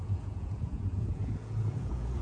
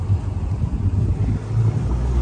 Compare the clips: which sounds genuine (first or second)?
second